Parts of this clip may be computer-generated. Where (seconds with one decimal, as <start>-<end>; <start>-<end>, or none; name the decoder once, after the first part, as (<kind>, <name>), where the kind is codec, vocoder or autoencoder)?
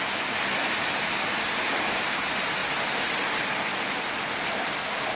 none